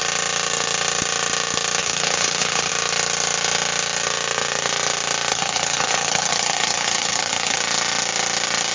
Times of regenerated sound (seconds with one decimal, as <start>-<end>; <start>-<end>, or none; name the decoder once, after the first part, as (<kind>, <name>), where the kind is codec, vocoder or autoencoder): 1.8-2.7 (codec, HILCodec); 5.3-7.6